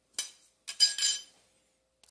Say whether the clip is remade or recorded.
recorded